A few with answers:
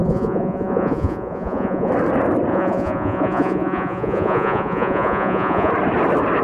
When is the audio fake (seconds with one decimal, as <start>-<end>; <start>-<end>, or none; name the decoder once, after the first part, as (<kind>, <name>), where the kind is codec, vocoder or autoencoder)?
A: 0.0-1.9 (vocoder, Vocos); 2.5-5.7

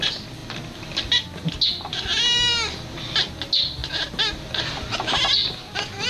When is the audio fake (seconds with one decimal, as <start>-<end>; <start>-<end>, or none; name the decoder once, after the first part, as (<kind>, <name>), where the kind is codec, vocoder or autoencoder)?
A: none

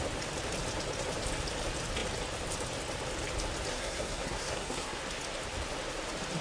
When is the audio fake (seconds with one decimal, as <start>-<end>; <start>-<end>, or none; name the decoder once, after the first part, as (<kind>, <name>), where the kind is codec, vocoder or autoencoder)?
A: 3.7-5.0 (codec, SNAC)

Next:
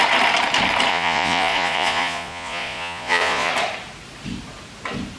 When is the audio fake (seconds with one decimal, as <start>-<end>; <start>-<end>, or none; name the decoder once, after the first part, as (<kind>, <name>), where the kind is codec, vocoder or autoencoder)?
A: 0.9-3.5 (vocoder, Vocos)

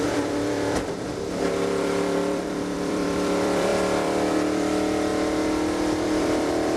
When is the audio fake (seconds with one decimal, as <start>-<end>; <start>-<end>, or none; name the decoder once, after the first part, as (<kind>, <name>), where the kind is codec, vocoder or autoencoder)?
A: 0.0-5.1 (vocoder, BigVGAN v2); 6.2-6.8

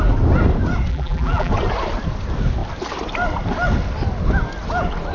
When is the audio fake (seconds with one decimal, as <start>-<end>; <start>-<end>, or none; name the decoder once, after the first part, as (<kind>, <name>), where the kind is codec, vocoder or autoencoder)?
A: 0.9-1.5 (vocoder, BigVGAN v2)